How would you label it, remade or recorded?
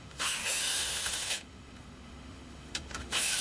remade